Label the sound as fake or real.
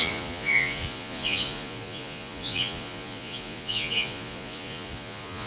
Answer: fake